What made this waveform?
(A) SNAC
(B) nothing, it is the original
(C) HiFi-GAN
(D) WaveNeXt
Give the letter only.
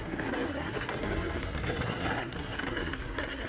A